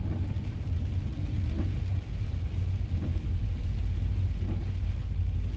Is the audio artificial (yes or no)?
no